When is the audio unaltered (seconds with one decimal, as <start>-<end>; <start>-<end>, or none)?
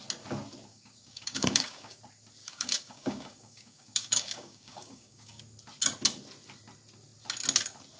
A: 0.0-0.7; 2.0-2.4; 5.4-8.0